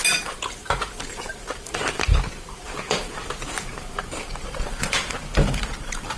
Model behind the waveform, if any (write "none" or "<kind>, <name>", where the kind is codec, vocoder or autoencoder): vocoder, BigVGAN v2